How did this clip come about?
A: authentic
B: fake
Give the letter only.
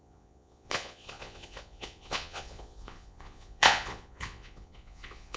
B